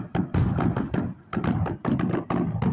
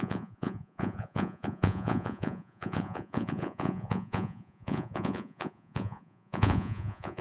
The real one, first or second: first